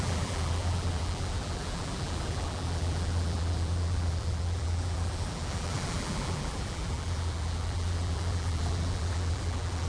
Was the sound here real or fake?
fake